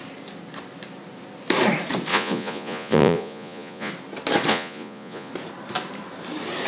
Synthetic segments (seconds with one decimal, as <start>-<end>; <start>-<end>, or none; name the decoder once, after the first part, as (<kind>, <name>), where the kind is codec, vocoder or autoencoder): 2.1-3.9 (vocoder, Vocos); 4.5-5.3